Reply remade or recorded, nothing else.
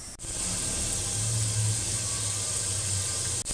recorded